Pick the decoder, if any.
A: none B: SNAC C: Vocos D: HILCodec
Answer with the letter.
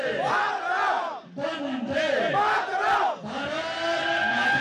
A